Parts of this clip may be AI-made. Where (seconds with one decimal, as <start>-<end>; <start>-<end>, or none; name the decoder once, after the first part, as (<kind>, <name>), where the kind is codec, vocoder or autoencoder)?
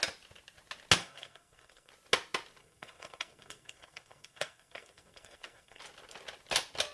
1.0-1.9 (codec, SNAC); 2.6-5.8